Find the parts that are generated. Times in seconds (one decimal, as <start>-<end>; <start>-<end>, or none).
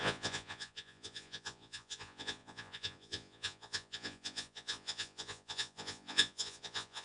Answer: 0.0-7.0